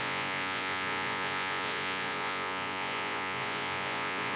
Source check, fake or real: fake